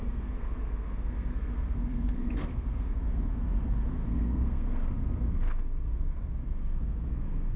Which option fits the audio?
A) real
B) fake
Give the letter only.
B